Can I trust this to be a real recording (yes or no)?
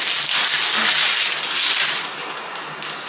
yes